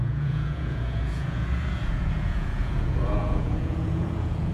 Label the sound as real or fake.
fake